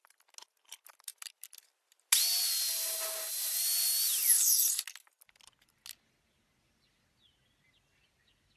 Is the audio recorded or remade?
recorded